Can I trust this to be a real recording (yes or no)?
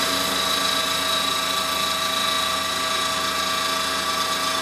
yes